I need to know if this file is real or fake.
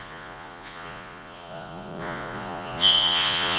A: fake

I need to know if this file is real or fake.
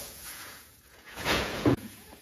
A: fake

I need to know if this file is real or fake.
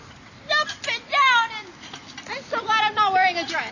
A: real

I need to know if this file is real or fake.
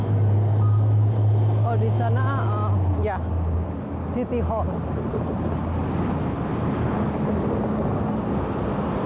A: real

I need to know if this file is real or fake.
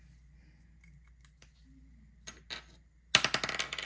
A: real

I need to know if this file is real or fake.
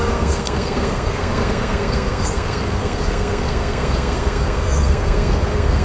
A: fake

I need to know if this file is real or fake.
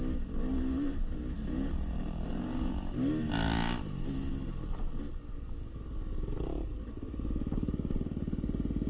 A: real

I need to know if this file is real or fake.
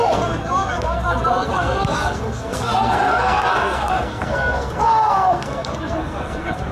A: fake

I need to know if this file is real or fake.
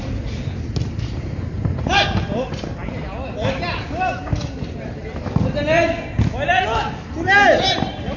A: real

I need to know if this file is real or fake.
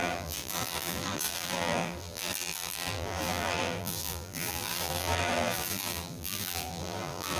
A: fake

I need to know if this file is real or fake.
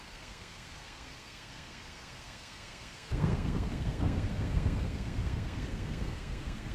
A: fake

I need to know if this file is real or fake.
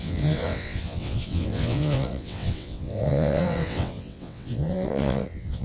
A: fake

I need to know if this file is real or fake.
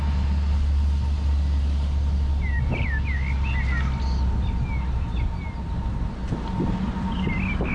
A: real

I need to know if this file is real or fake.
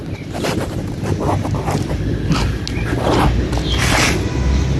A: real